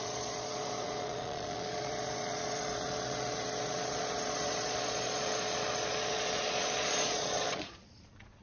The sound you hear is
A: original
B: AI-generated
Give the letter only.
B